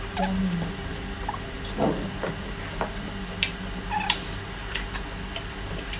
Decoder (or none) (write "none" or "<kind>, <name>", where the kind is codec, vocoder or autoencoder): none